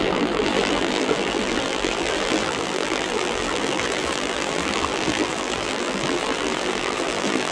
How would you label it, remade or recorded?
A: remade